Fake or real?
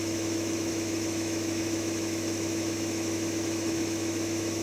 fake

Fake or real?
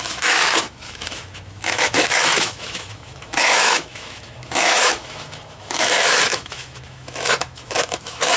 fake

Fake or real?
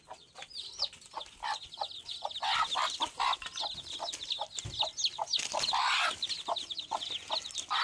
real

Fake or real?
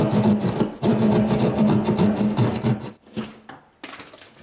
real